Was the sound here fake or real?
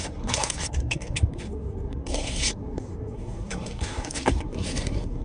fake